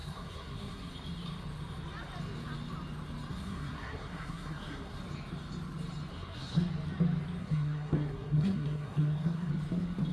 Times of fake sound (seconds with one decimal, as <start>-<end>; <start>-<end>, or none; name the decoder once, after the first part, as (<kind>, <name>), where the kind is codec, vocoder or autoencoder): 0.0-0.9 (codec, SNAC); 3.3-5.0; 6.1-6.7; 7.4-9.5